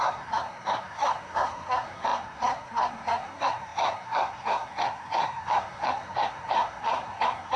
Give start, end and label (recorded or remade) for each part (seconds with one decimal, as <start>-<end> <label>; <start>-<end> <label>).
0.0-7.6 remade

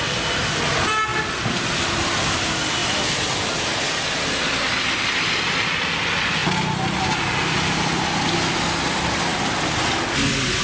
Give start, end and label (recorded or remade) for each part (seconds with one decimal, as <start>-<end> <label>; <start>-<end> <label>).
0.0-10.6 recorded

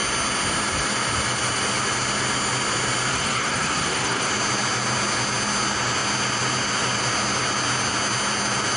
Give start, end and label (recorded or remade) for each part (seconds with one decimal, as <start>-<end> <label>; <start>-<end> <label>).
0.0-3.1 recorded; 3.1-4.3 remade; 4.3-8.8 recorded

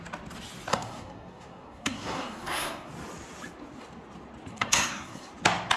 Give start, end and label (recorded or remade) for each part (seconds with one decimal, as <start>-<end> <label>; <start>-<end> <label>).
0.0-0.7 recorded; 0.7-2.9 remade; 2.9-4.5 recorded; 4.5-5.3 remade; 5.3-5.8 recorded

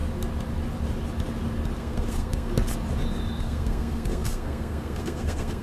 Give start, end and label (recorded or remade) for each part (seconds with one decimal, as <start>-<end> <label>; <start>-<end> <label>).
0.0-1.8 recorded; 1.8-2.5 remade; 2.5-3.4 recorded; 3.4-5.6 remade

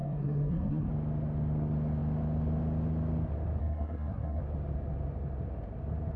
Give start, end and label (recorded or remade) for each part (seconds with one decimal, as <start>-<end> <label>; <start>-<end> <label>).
0.0-0.9 remade; 0.9-3.6 recorded; 3.6-4.4 remade; 4.4-6.2 recorded